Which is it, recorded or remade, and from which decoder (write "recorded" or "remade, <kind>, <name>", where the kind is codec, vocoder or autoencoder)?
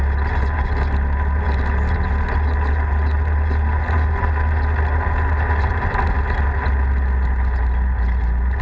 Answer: recorded